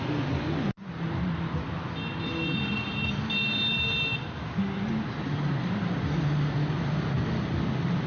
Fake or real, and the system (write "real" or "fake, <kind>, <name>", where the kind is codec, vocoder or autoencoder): real